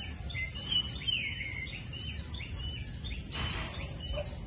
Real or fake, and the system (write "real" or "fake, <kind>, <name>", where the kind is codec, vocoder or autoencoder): real